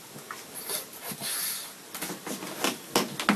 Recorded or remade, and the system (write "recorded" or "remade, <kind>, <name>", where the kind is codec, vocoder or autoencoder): recorded